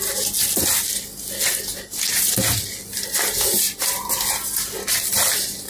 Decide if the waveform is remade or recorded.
recorded